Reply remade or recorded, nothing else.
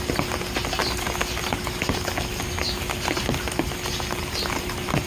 recorded